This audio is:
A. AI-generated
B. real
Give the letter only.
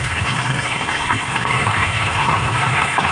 A